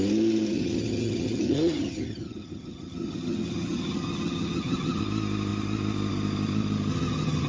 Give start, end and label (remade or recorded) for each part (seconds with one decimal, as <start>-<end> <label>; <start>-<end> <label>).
0.0-0.5 recorded; 0.5-5.0 remade; 5.0-6.9 recorded; 6.9-7.5 remade